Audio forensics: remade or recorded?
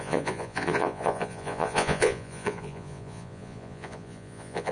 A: remade